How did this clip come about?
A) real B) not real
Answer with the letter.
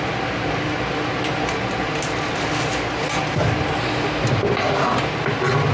A